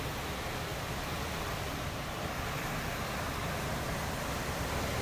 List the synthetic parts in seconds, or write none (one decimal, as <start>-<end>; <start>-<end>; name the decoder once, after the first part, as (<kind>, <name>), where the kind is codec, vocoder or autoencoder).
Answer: none